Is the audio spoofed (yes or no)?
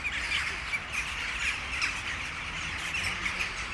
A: no